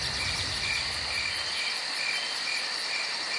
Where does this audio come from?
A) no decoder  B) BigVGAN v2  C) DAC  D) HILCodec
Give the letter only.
A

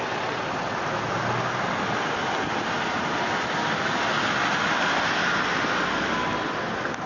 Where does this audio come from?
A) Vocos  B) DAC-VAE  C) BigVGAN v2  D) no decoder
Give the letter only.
D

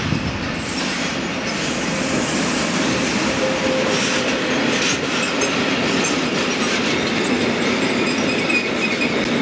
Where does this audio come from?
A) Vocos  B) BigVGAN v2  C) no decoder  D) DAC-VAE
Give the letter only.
C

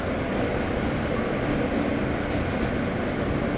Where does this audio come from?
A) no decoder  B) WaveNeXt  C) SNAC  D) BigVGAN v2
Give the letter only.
A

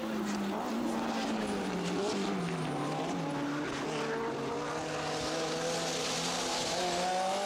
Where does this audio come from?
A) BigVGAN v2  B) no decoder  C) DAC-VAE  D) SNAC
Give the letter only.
B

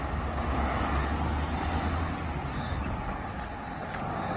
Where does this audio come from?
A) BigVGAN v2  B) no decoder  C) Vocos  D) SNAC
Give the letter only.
B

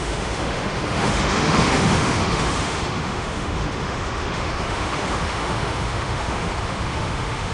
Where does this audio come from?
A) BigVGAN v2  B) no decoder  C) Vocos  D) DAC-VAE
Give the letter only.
D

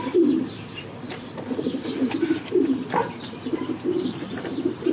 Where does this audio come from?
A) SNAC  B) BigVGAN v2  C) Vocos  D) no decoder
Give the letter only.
B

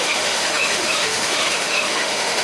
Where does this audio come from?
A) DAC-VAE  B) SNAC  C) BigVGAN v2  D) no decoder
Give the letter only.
A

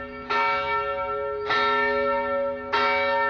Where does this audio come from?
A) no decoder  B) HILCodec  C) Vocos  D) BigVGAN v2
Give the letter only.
A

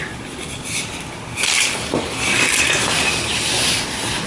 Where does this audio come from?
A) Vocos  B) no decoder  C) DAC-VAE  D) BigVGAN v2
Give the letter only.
B